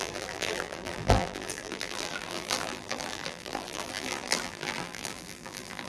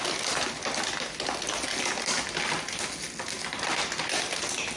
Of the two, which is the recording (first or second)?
second